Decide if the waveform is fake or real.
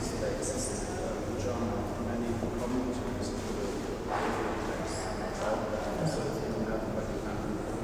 real